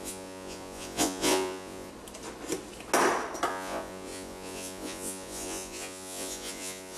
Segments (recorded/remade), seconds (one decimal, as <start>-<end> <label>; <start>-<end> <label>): 0.0-1.9 remade; 1.9-3.5 recorded; 3.5-7.0 remade